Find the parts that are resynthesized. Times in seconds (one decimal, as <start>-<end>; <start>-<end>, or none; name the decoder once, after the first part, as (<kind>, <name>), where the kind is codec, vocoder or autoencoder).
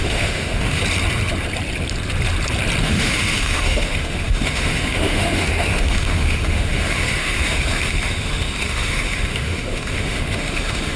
0.0-0.8 (autoencoder, DAC-VAE); 2.8-11.0